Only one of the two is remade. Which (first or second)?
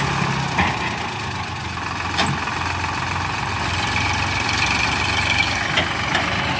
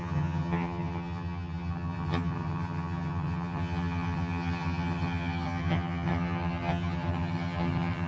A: second